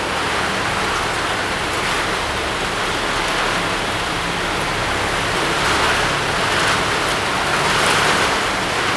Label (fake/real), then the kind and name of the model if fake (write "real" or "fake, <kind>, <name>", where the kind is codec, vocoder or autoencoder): real